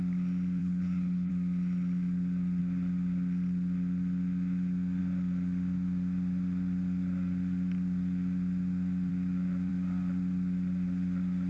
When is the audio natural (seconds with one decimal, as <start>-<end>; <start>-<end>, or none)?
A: 0.0-0.6; 1.3-11.5

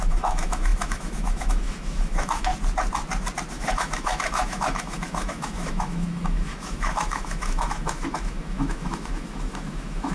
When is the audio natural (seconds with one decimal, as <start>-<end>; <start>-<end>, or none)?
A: 2.5-3.5

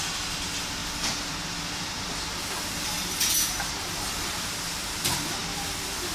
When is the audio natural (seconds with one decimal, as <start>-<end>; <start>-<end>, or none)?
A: 0.0-0.8; 3.7-6.1

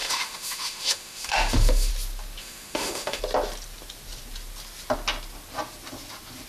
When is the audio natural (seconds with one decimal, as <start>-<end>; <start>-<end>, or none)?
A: 1.9-2.4; 3.2-6.5